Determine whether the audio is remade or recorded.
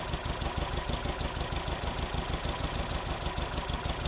recorded